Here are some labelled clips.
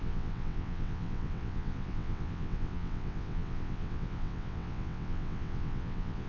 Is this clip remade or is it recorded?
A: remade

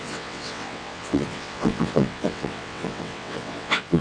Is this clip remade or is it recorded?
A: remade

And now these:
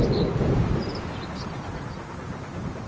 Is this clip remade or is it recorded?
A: recorded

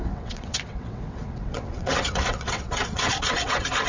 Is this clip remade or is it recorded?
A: remade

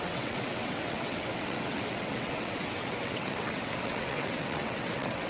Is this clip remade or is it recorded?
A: remade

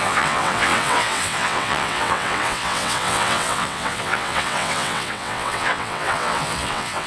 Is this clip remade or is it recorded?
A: remade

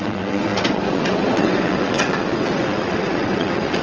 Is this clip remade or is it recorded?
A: remade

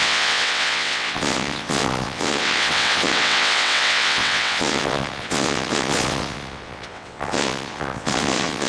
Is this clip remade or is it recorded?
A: remade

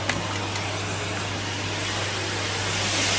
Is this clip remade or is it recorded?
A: recorded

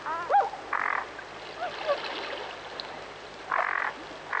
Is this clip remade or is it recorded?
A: recorded